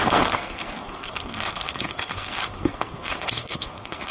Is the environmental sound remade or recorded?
remade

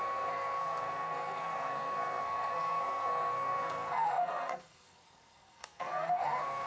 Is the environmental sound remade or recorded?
remade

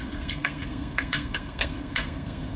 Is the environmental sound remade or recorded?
remade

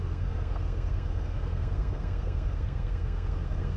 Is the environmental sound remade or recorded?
remade